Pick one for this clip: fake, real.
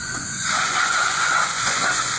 fake